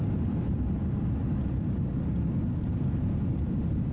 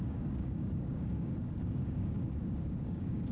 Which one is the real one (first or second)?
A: first